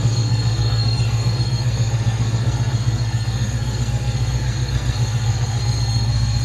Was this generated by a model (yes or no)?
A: yes